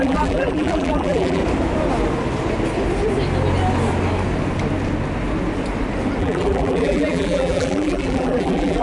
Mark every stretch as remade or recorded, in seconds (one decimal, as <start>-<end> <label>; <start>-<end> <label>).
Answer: 0.0-1.4 remade; 1.4-6.2 recorded; 6.2-8.8 remade